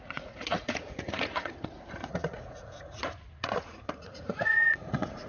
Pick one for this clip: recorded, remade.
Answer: remade